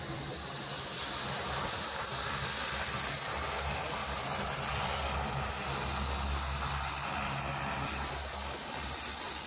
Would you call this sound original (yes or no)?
yes